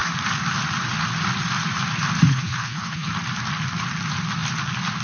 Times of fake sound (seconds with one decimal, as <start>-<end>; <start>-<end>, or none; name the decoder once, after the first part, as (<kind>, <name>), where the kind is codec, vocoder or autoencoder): 2.3-3.1 (codec, HILCodec)